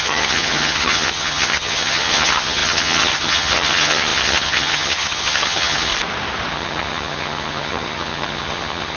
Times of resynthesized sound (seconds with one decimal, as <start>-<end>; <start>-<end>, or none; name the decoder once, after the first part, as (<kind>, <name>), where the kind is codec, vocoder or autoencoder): 0.0-5.9 (vocoder, HiFi-GAN); 6.5-9.0